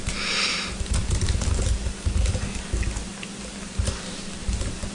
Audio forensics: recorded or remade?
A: recorded